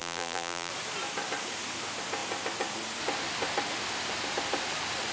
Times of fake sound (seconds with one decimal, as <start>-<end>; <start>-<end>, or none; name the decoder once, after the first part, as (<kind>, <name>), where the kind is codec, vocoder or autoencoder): 0.0-0.7 (vocoder, BigVGAN v2)